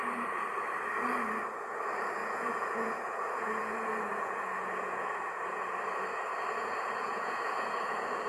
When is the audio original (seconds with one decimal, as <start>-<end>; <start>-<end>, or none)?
0.0-2.2; 5.7-6.3